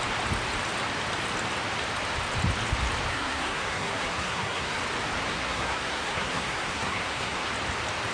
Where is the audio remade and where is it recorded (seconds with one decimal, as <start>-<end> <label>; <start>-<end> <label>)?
0.0-3.1 recorded; 3.1-4.8 remade; 4.8-5.3 recorded; 5.3-7.5 remade; 7.5-8.1 recorded